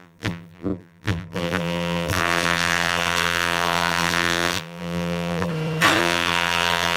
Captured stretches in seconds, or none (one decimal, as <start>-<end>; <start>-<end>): 5.5-6.0